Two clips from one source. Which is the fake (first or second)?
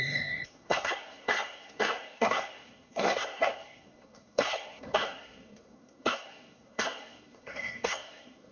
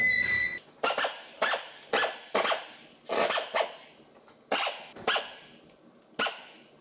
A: first